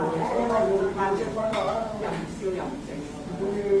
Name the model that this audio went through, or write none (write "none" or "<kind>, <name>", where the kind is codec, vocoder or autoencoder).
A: codec, DAC